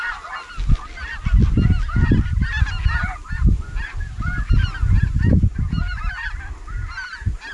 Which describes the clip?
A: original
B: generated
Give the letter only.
A